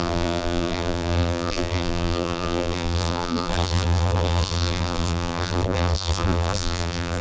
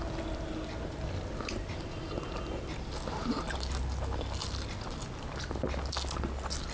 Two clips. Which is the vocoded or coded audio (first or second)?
first